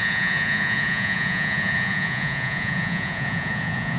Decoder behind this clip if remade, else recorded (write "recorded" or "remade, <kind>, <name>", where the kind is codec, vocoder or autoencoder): remade, vocoder, Vocos